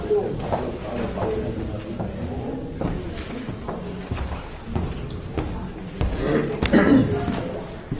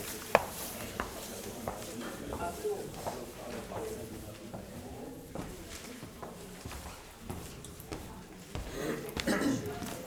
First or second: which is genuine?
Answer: first